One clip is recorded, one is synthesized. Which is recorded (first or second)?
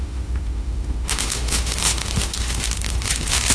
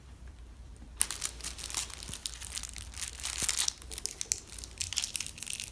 second